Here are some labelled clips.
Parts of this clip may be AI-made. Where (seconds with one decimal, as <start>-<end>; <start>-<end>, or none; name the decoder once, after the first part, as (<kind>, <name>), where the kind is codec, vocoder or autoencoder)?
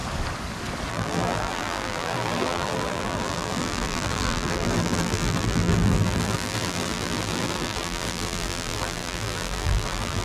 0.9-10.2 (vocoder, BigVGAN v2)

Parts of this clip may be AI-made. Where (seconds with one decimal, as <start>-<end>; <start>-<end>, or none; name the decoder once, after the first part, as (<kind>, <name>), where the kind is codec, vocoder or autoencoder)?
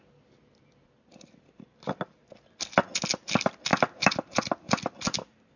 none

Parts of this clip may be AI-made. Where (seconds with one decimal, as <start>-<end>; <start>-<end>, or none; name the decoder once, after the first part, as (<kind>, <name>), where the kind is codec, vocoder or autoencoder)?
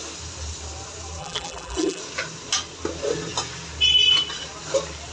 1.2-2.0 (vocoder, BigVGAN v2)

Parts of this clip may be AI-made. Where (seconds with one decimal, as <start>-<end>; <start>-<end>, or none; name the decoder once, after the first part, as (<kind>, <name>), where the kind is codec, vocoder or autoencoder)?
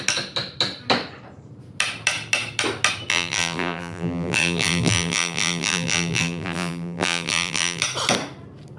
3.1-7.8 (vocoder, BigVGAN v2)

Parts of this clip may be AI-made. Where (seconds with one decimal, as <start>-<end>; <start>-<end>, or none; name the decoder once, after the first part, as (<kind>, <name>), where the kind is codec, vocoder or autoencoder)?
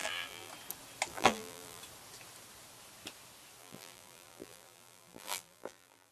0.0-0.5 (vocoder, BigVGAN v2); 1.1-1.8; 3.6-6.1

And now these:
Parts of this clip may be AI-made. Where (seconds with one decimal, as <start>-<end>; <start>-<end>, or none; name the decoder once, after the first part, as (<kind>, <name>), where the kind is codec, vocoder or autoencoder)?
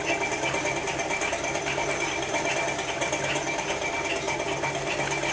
none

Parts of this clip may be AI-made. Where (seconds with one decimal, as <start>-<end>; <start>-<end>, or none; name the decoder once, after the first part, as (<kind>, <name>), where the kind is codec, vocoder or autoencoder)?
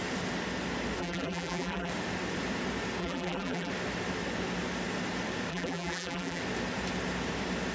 1.0-1.9 (vocoder, BigVGAN v2); 3.0-3.7; 5.5-6.4